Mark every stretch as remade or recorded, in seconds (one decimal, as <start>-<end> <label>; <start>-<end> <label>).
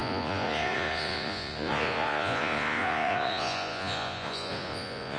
0.0-5.2 remade